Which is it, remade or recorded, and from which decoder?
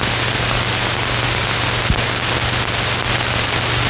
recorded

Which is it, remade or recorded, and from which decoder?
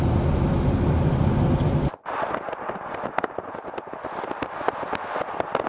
recorded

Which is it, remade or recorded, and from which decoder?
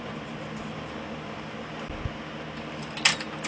recorded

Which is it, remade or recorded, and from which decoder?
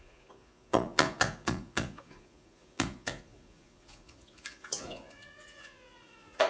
remade, vocoder, Vocos